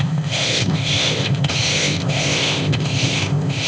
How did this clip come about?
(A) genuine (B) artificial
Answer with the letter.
B